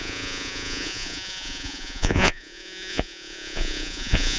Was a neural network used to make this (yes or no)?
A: yes